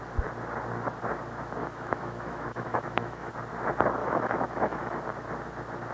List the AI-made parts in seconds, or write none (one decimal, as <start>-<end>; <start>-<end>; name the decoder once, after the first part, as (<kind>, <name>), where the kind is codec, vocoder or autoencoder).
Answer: 1.6-3.3 (autoencoder, DAC-VAE); 4.0-5.0